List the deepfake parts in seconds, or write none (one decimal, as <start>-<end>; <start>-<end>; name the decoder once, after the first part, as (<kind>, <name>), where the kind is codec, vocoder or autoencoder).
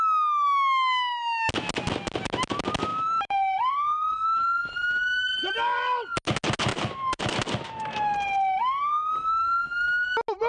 2.9-3.7 (vocoder, BigVGAN v2); 6.7-7.3